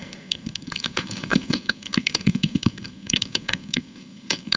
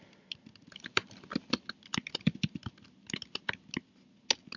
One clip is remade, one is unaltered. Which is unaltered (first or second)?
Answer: second